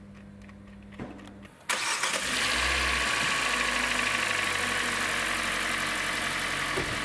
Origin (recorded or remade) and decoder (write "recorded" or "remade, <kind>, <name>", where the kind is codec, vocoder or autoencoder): recorded